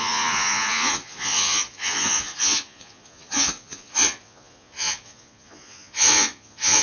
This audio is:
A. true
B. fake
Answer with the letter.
B